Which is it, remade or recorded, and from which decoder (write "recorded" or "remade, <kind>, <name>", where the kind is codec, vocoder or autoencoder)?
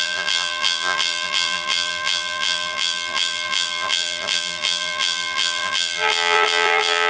remade, vocoder, BigVGAN v2